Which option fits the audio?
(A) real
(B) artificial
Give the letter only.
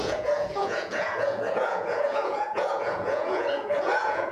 B